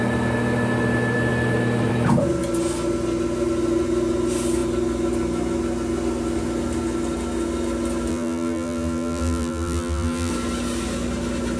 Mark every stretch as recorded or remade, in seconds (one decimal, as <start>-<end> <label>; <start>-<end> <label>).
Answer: 0.0-8.1 recorded; 8.1-10.3 remade; 10.3-11.6 recorded